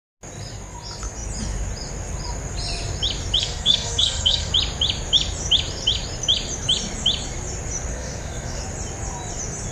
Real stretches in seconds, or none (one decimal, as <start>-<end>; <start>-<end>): 0.0-3.4; 4.5-7.9; 8.6-9.7